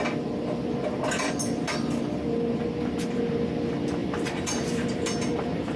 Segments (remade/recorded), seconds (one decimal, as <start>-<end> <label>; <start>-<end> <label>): 0.0-4.0 recorded; 4.0-5.8 remade